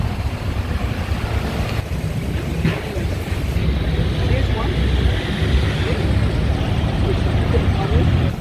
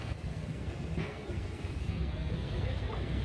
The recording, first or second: first